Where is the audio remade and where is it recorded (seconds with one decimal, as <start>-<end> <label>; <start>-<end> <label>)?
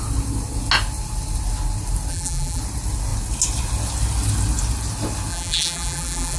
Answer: 0.0-2.1 recorded; 2.1-2.6 remade; 2.6-5.3 recorded; 5.3-6.4 remade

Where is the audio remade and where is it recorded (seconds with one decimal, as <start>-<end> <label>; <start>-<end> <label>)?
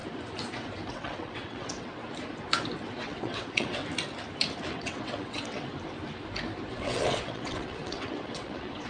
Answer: 0.0-0.9 recorded; 0.9-2.0 remade; 2.0-3.0 recorded; 3.0-3.8 remade; 3.8-4.7 recorded; 4.7-5.7 remade; 5.7-6.7 recorded; 6.7-8.9 remade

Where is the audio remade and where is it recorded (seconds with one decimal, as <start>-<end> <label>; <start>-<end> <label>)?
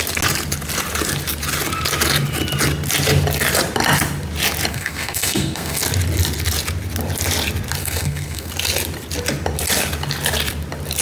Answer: 0.0-4.7 recorded; 4.7-5.8 remade; 5.8-7.8 recorded; 7.8-8.5 remade; 8.5-11.0 recorded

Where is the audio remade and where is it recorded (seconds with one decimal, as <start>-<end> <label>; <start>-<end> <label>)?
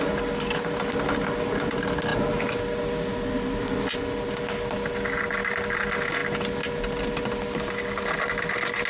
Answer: 0.0-8.9 recorded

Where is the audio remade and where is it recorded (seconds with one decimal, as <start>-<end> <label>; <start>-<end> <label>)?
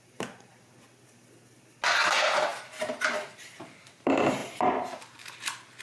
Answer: 0.0-0.5 remade; 0.5-2.1 recorded; 2.1-5.8 remade